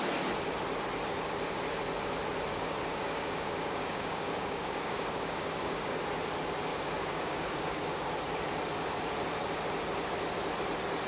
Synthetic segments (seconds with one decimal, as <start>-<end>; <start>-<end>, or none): 2.5-6.0; 6.7-8.2